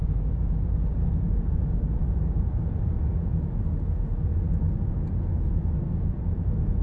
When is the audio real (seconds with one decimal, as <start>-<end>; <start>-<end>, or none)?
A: none